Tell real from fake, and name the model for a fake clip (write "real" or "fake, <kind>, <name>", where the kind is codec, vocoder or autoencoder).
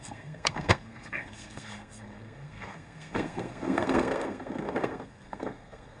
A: fake, codec, SNAC